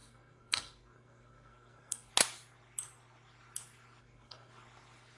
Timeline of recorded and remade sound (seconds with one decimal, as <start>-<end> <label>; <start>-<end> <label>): 0.0-2.1 remade; 2.1-4.0 recorded; 4.0-4.5 remade; 4.5-5.2 recorded